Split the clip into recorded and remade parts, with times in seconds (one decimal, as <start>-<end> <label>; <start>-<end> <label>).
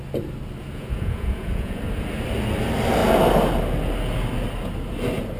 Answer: 0.0-0.6 recorded; 0.6-1.8 remade; 1.8-5.4 recorded